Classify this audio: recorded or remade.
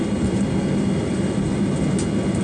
recorded